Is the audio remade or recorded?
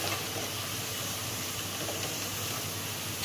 recorded